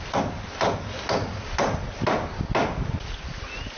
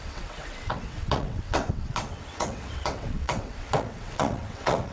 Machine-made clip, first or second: second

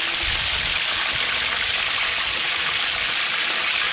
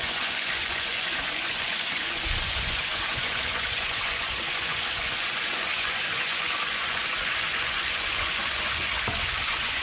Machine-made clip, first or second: second